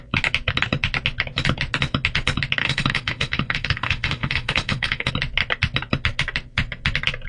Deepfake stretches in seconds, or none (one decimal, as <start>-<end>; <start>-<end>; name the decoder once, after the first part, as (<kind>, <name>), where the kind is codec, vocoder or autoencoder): 2.6-5.1 (autoencoder, DAC-VAE)